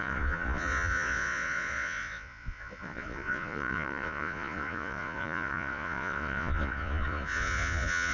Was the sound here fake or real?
fake